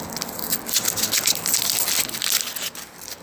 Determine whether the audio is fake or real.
real